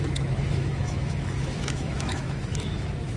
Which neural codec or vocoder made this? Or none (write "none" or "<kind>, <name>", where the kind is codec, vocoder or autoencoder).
autoencoder, DAC-VAE